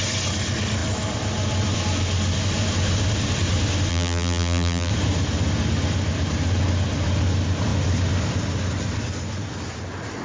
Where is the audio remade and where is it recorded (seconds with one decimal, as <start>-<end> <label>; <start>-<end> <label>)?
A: 0.0-3.9 recorded; 3.9-4.9 remade; 4.9-10.2 recorded